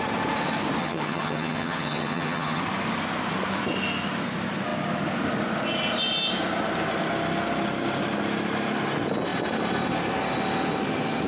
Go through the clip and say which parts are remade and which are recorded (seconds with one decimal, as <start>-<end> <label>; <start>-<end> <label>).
0.0-0.8 recorded; 0.8-2.6 remade; 2.6-11.3 recorded